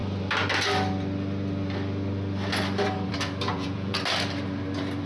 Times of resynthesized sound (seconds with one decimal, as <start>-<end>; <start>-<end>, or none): 3.5-4.0